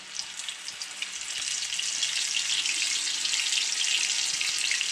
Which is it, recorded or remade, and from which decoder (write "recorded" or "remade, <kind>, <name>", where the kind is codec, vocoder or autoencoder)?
recorded